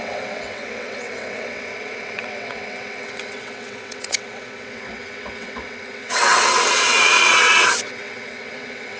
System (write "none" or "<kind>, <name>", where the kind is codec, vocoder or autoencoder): vocoder, WaveNeXt